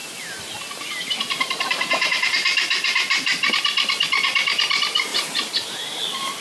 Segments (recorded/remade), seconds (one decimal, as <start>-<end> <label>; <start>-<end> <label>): 0.0-3.5 remade; 3.5-5.1 recorded; 5.1-6.0 remade; 6.0-6.4 recorded